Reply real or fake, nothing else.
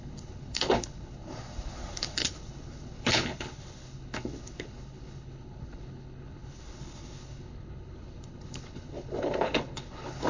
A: fake